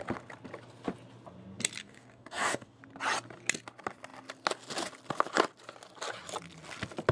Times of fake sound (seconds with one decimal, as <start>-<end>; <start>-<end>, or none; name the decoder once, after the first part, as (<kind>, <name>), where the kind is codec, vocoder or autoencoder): 1.8-2.8 (codec, DAC)